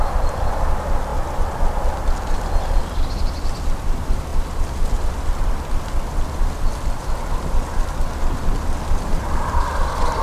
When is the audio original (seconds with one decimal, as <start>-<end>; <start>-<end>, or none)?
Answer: 1.1-3.8; 4.3-9.0